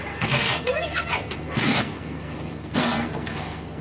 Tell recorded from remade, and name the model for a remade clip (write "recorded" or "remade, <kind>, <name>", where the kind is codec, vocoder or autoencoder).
remade, codec, SNAC